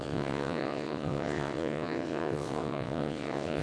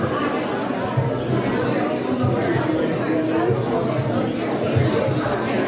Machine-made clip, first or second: first